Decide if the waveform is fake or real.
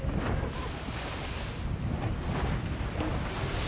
real